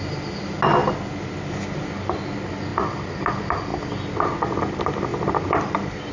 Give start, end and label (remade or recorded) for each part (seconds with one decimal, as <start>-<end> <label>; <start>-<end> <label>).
0.0-6.1 recorded